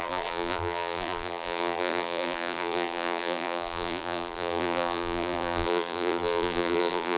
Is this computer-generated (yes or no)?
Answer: yes